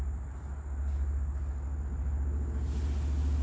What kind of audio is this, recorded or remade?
recorded